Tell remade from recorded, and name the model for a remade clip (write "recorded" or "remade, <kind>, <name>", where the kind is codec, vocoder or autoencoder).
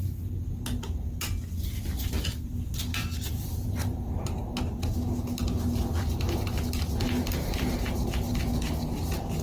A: recorded